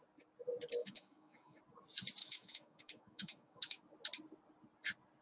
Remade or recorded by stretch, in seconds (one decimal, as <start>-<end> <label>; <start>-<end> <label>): 0.0-0.8 recorded; 0.8-1.6 remade; 1.6-2.2 recorded; 2.2-3.8 remade; 3.8-5.2 recorded